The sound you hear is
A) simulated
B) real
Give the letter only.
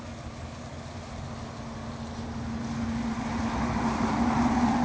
B